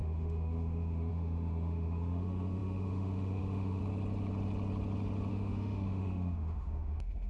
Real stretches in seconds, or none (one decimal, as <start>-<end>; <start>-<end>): 3.8-5.3